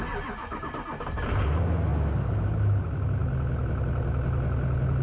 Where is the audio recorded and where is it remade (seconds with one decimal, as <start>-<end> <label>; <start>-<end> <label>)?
0.0-5.0 recorded